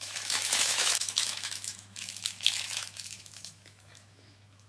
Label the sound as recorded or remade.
remade